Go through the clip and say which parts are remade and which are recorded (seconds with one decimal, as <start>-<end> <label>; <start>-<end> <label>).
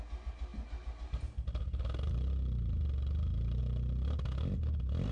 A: 0.0-5.1 recorded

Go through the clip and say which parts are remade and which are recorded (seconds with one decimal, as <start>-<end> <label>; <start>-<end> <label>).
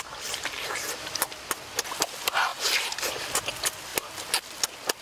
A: 0.0-5.0 recorded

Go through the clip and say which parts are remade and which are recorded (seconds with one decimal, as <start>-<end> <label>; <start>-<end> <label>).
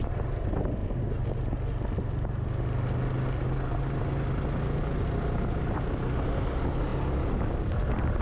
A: 0.0-8.2 recorded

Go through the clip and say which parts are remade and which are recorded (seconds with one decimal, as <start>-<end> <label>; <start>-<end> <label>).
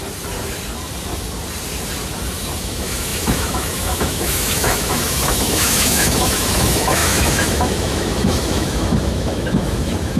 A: 0.0-2.6 recorded; 2.6-10.2 remade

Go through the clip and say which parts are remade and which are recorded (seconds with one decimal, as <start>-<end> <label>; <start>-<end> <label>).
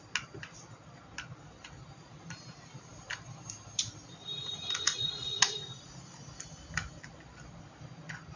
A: 0.0-4.4 recorded; 4.4-5.8 remade; 5.8-8.4 recorded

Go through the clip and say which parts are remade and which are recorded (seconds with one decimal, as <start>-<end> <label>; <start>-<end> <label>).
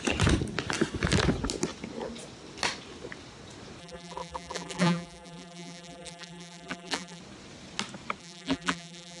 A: 0.0-3.8 recorded; 3.8-7.2 remade; 7.2-8.2 recorded; 8.2-9.2 remade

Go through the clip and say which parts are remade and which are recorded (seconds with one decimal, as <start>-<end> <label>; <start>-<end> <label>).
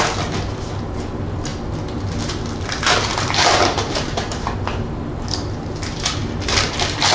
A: 0.0-3.1 recorded; 3.1-4.5 remade; 4.5-7.1 recorded